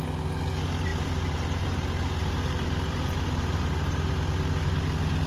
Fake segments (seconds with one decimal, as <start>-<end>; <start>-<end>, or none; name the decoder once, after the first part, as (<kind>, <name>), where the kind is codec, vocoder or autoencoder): 0.9-4.1 (vocoder, BigVGAN v2)